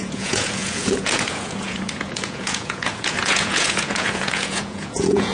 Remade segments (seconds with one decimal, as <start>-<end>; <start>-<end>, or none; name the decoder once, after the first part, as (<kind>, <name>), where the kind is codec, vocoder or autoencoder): 0.0-5.3 (vocoder, Vocos)